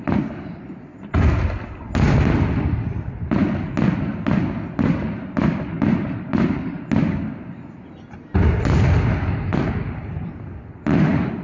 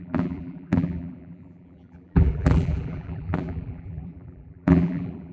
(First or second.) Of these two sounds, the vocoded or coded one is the second